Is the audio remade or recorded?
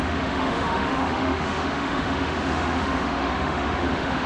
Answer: remade